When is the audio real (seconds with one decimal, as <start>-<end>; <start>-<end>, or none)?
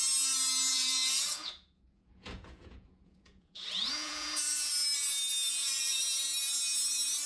0.0-0.7; 4.7-5.5; 6.0-7.3